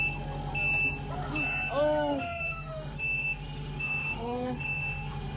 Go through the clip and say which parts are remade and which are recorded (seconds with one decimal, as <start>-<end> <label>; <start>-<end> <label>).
0.0-2.1 recorded; 2.1-5.4 remade